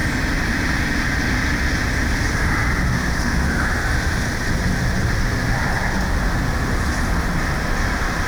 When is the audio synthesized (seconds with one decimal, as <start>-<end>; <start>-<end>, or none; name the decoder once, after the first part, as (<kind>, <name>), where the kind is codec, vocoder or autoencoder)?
3.0-3.7 (autoencoder, DAC-VAE)